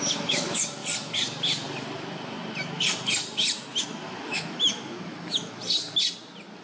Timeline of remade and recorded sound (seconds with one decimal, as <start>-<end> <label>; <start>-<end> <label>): 0.0-0.8 remade; 0.8-3.8 recorded; 3.8-5.6 remade; 5.6-6.6 recorded